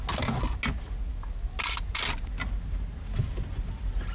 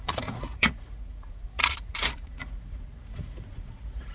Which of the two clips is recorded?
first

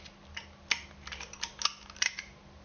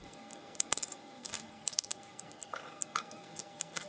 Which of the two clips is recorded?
first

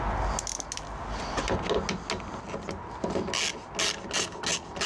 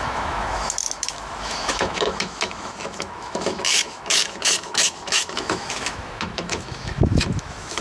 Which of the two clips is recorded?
first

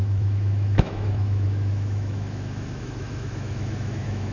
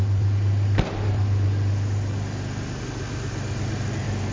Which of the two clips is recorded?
second